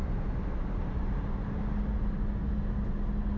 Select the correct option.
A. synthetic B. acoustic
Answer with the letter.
B